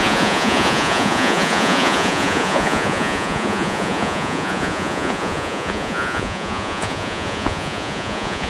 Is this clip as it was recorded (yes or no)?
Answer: no